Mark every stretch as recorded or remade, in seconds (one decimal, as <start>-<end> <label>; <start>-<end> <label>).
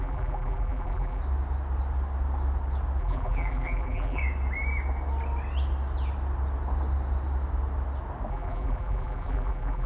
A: 0.0-1.2 remade; 1.2-3.0 recorded; 3.0-4.2 remade; 4.2-8.3 recorded; 8.3-9.9 remade